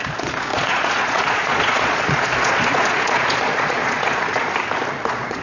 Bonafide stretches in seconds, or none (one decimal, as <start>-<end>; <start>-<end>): 4.5-5.0